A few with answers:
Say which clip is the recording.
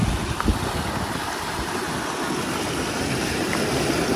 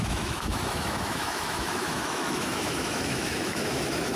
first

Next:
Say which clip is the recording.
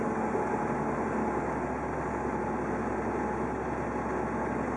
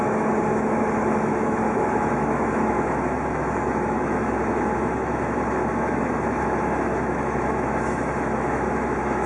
first